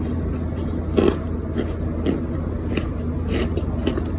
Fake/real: real